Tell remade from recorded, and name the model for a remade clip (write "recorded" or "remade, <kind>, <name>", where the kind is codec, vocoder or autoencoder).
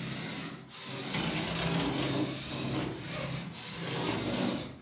recorded